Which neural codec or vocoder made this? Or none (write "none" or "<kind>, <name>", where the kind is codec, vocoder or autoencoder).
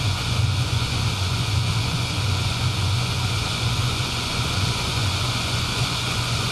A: vocoder, Vocos